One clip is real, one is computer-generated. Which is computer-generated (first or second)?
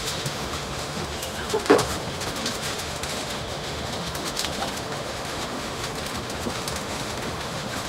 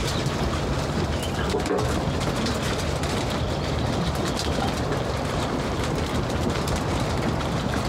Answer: first